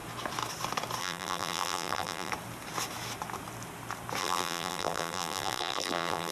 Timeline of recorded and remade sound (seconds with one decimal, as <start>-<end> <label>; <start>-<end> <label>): 0.0-1.0 recorded; 1.0-2.3 remade; 2.3-4.2 recorded; 4.2-6.3 remade